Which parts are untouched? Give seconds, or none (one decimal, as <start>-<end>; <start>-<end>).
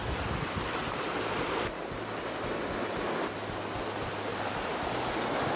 1.2-4.3; 4.9-5.6